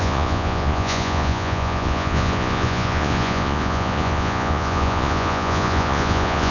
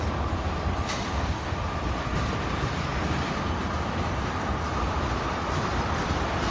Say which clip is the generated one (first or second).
first